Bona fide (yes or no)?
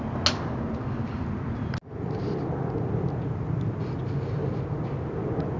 yes